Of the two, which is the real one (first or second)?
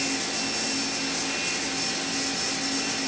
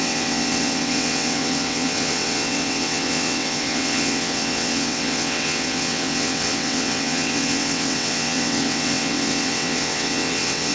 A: first